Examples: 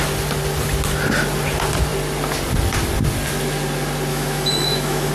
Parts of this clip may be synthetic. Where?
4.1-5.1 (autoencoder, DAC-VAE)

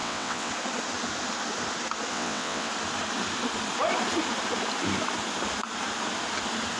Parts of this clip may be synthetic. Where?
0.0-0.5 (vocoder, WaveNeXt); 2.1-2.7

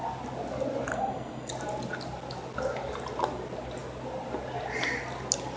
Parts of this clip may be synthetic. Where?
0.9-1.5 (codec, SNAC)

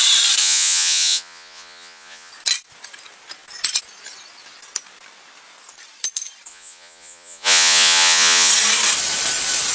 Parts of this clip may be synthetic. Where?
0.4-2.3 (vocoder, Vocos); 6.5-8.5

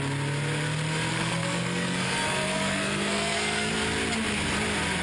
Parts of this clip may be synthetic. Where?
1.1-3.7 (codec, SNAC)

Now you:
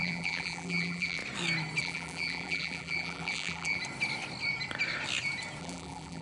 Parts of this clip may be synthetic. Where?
0.0-1.2 (vocoder, BigVGAN v2); 1.8-3.8; 5.6-6.2

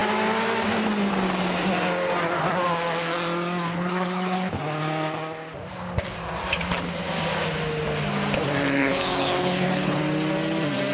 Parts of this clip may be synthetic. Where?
3.7-4.6 (codec, HILCodec); 8.8-10.0

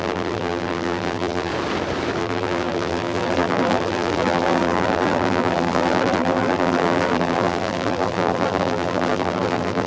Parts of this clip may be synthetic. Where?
0.0-1.5 (vocoder, BigVGAN v2); 2.2-9.9